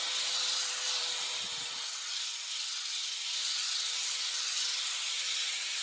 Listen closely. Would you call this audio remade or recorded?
remade